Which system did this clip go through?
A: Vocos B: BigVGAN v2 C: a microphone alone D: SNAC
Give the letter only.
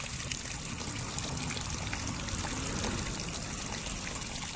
C